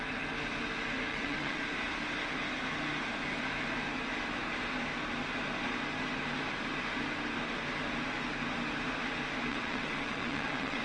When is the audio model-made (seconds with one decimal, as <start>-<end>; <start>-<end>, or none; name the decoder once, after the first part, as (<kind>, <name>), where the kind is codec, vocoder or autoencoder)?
1.1-1.6 (vocoder, WaveNeXt); 9.5-10.8